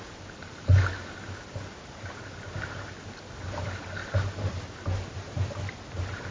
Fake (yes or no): no